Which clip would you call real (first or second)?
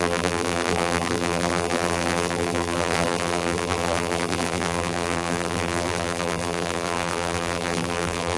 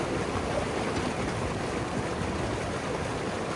second